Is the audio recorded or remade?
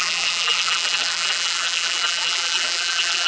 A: remade